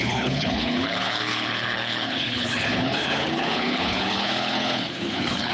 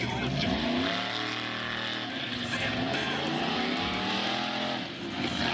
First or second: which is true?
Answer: second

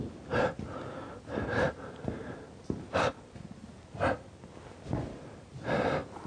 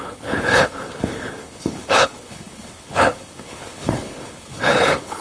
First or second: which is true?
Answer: first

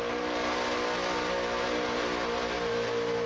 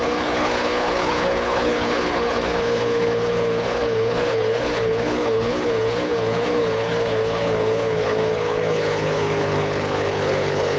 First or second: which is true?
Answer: first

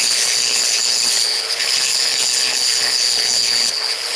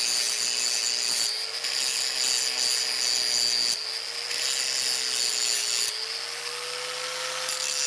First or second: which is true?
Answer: second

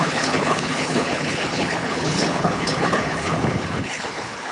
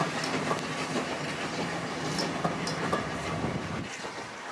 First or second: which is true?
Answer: second